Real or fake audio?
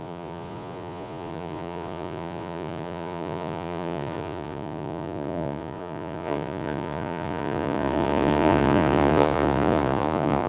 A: fake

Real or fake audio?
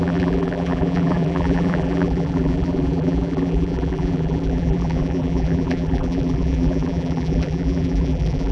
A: fake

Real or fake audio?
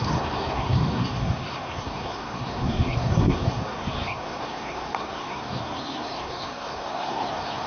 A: fake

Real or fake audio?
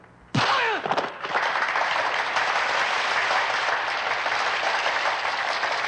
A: real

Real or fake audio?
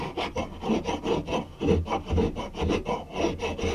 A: real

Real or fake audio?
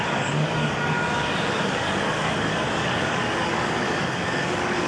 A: fake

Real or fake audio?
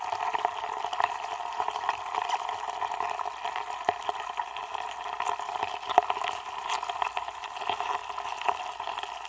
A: real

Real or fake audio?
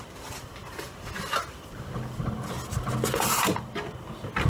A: real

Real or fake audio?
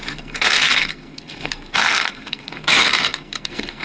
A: fake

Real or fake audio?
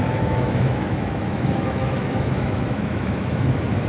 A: fake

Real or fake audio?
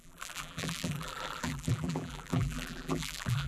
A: fake